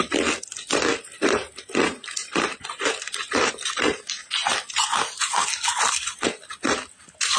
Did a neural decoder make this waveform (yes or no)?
no